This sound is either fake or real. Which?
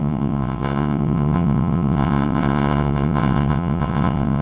fake